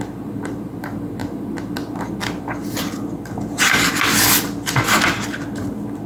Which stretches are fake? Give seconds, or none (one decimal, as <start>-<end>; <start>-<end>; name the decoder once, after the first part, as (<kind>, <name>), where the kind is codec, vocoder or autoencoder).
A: none